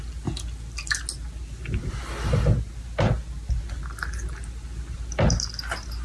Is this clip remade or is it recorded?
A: recorded